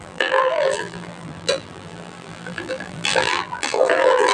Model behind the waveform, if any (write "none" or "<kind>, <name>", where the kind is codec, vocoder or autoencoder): vocoder, BigVGAN v2